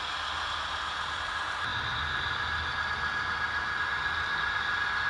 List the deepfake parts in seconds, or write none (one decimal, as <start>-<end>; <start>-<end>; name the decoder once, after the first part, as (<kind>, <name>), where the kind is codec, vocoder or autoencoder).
none